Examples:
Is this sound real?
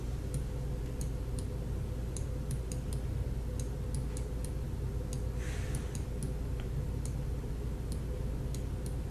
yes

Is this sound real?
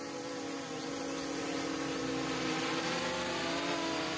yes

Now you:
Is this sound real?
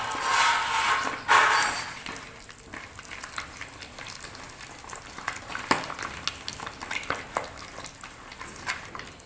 yes